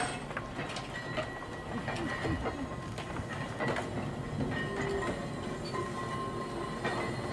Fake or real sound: real